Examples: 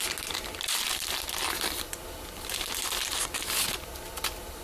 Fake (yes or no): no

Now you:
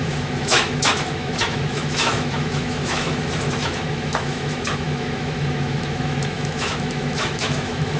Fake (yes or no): yes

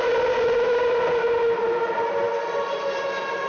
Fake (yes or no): no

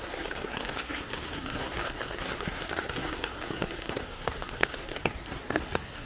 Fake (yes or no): yes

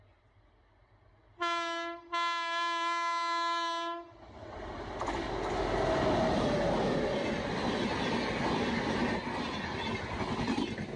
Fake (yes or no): no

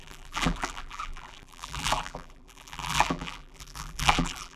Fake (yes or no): yes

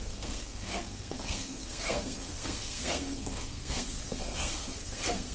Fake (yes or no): yes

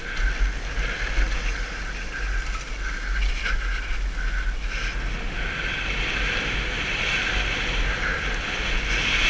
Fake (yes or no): no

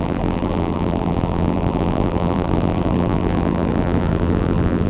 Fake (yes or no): yes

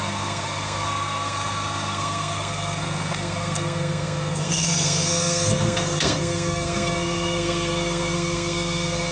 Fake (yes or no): yes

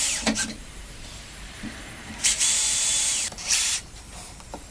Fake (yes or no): yes